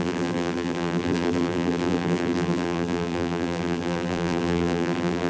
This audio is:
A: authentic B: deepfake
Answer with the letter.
B